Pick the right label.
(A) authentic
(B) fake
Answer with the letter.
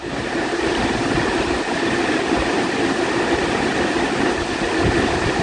B